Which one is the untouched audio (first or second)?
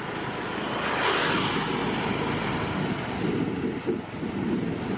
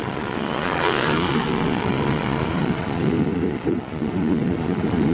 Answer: first